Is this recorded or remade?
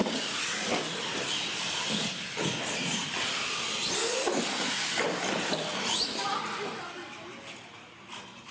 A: recorded